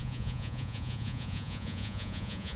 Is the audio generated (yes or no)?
yes